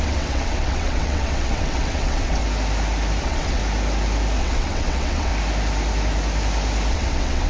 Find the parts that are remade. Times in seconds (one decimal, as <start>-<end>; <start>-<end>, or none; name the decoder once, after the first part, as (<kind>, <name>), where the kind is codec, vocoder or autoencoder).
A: 0.0-2.4 (vocoder, WaveNeXt); 3.2-3.6; 4.4-5.3; 6.9-7.5